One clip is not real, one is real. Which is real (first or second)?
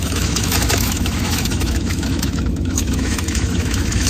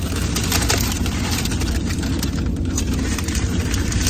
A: second